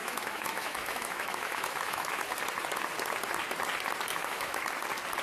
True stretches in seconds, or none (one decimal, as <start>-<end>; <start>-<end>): 2.2-4.1; 4.6-5.2